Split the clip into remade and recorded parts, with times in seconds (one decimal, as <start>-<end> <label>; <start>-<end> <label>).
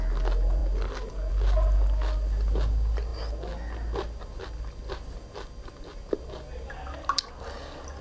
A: 0.0-8.0 recorded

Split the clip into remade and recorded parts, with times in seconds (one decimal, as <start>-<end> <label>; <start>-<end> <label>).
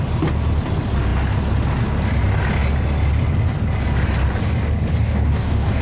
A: 0.0-5.0 recorded; 5.0-5.8 remade